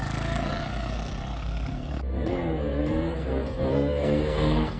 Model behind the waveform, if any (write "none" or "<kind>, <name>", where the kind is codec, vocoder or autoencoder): codec, SNAC